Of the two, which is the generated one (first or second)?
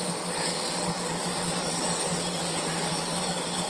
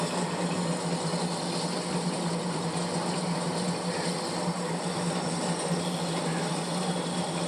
first